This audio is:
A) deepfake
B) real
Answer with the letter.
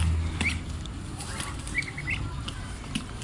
B